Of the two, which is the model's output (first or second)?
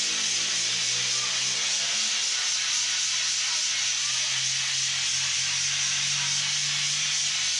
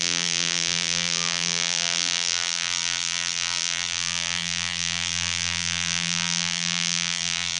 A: second